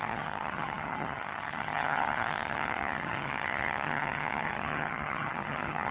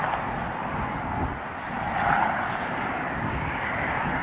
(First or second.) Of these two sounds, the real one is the second